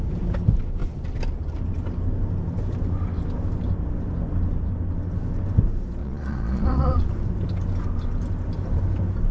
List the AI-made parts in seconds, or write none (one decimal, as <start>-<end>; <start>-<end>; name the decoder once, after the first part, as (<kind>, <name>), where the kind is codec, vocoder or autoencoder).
6.0-7.1 (vocoder, Vocos)